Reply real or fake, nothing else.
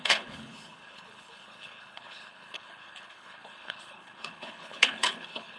fake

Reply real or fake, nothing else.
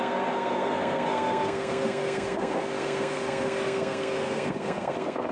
fake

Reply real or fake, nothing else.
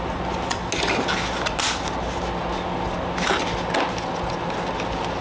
real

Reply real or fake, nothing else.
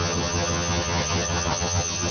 fake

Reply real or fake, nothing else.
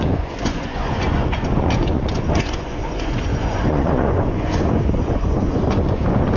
fake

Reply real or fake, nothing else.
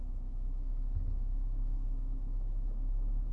fake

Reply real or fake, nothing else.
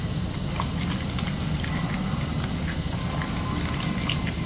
real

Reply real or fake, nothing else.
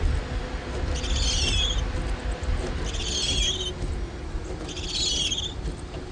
real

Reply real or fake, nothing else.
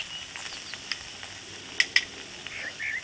real